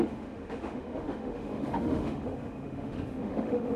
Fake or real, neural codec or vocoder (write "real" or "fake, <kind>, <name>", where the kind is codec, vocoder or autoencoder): fake, autoencoder, DAC-VAE